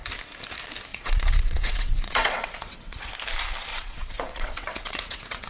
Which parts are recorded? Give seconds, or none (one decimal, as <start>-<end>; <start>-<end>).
0.0-0.9; 3.1-3.7